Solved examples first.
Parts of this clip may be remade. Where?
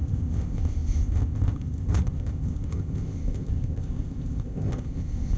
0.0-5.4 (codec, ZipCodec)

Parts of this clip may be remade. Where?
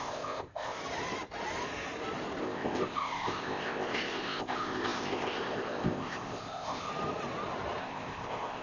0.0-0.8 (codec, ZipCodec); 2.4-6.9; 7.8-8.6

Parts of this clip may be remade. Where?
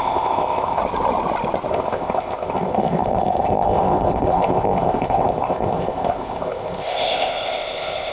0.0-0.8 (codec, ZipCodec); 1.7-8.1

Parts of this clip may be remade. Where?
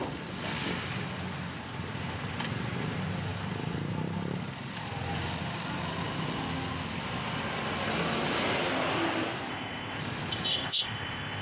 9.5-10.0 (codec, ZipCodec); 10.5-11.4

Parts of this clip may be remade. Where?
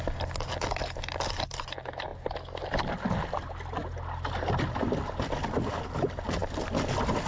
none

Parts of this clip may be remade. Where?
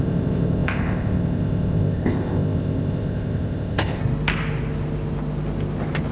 0.0-4.0 (codec, ZipCodec)